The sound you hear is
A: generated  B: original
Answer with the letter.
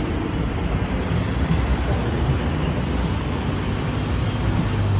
B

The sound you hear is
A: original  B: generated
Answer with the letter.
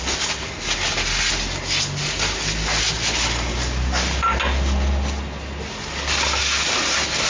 A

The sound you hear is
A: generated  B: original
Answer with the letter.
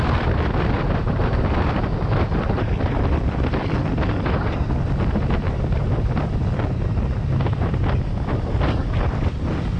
A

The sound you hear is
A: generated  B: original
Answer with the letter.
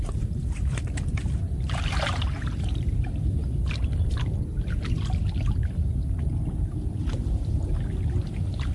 A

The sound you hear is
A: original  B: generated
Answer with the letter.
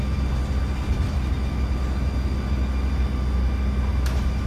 A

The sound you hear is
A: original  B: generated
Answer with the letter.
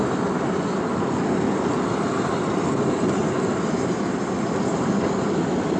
A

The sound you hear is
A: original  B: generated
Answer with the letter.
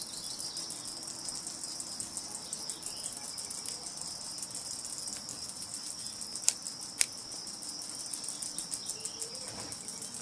A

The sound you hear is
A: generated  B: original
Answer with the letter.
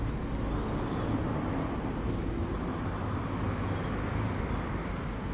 B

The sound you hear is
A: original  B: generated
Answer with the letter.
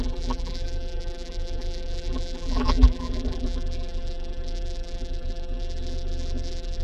B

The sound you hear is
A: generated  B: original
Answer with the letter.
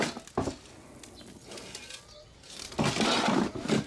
B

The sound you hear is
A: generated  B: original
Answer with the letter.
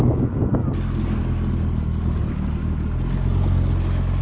B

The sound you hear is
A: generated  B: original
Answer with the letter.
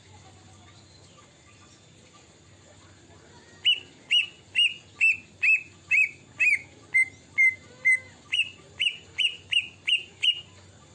B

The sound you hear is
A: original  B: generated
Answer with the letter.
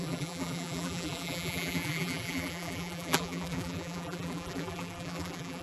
B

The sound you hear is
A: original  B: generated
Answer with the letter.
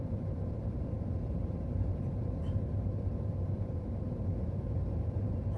B